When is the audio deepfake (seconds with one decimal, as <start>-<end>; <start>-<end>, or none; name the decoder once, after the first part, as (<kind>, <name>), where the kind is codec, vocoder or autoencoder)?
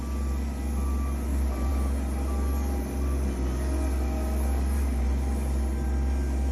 none